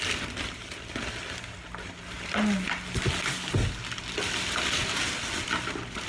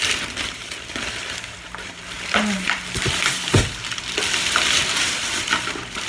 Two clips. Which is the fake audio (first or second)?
second